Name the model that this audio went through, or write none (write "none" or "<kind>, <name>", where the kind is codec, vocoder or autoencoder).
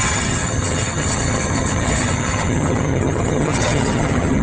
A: vocoder, HiFi-GAN